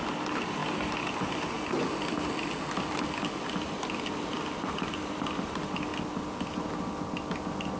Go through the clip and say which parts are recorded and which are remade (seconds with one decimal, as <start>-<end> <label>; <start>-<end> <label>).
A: 0.0-7.8 recorded